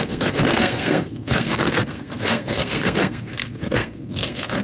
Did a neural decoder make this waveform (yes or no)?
yes